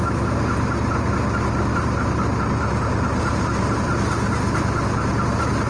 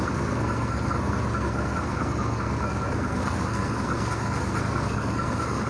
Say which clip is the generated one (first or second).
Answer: second